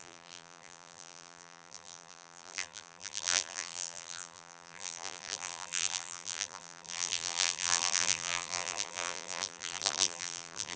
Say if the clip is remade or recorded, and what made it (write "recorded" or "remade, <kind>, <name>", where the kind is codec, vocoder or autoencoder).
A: remade, vocoder, BigVGAN v2